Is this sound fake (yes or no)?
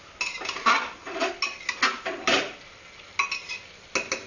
no